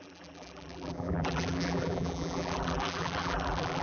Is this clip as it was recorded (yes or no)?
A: no